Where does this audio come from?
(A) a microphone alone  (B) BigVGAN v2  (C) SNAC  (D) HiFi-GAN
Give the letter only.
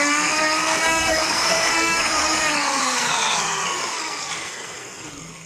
C